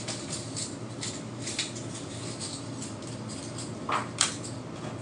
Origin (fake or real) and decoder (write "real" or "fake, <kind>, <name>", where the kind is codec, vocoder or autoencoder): real